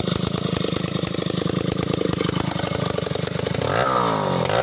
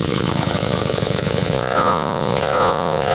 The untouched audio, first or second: first